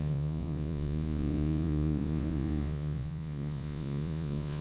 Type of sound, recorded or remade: remade